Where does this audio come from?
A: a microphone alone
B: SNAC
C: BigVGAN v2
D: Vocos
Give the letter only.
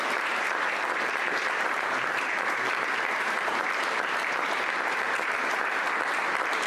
C